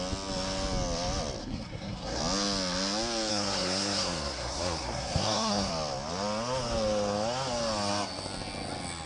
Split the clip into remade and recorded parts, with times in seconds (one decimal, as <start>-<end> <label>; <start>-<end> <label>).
0.0-1.4 recorded; 1.4-2.2 remade; 2.2-3.3 recorded; 3.3-5.7 remade; 5.7-9.1 recorded